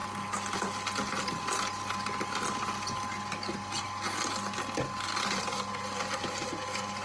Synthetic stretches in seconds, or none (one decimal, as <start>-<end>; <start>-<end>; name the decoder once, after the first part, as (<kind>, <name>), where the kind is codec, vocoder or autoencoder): none